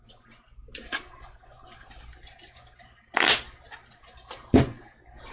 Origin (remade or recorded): recorded